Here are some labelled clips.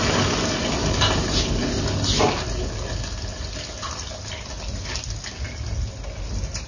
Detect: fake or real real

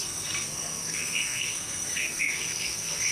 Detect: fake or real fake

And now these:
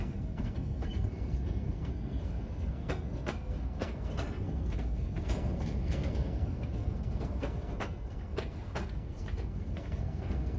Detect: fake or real fake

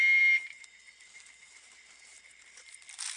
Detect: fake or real real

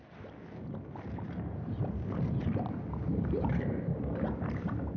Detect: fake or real real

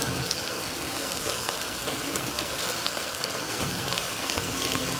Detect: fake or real fake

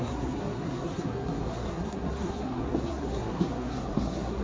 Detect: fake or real fake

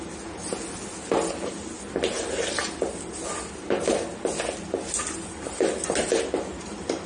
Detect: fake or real real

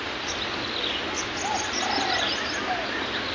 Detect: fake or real real